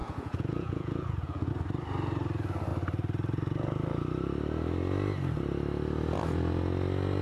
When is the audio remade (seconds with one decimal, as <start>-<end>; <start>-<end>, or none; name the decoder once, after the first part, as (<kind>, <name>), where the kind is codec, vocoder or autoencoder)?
0.0-1.5 (vocoder, Vocos)